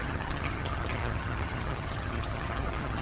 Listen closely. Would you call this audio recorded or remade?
remade